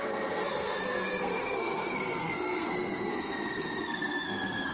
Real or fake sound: fake